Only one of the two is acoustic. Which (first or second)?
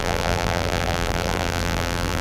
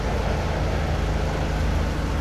second